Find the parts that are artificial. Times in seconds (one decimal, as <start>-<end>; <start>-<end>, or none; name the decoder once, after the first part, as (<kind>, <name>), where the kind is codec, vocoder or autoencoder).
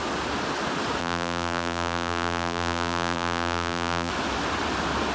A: 1.0-4.1 (vocoder, BigVGAN v2)